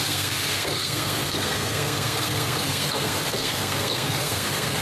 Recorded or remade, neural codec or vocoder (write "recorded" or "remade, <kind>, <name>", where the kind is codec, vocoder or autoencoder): remade, codec, SNAC